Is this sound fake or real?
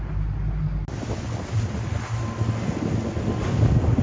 real